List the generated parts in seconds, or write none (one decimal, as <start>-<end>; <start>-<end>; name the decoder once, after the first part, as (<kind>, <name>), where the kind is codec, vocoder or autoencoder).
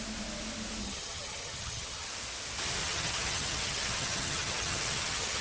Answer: 0.8-2.1 (vocoder, HiFi-GAN); 2.8-5.4